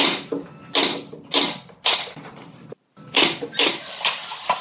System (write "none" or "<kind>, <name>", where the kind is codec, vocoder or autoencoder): none